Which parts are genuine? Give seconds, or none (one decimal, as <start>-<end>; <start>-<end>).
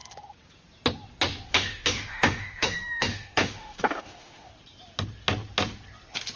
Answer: 0.0-1.5; 4.5-6.4